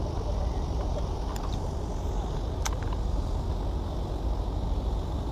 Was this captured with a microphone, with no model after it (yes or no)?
yes